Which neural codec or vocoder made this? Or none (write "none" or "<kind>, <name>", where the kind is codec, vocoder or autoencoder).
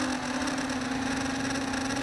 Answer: none